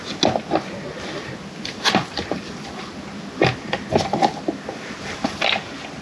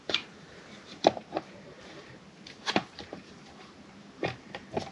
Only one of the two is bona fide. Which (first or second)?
first